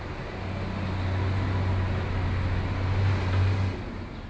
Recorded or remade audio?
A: recorded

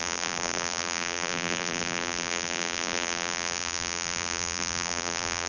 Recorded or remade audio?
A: remade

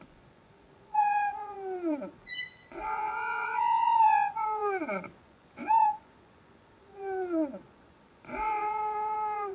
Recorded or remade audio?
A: remade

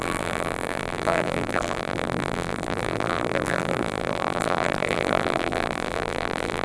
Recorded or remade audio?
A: remade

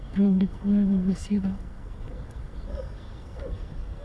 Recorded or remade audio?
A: remade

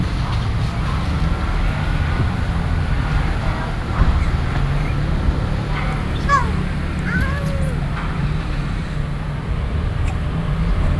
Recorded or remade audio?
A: recorded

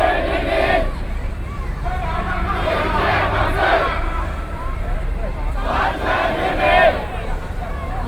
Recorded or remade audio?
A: remade